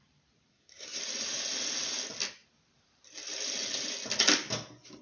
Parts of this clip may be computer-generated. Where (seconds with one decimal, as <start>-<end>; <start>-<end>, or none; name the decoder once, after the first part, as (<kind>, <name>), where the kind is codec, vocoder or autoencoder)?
0.5-1.0 (codec, SNAC)